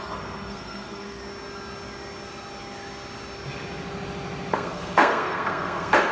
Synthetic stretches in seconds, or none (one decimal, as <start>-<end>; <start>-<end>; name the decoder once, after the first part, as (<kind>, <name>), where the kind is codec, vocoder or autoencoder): 0.0-1.2 (codec, SNAC); 4.5-6.1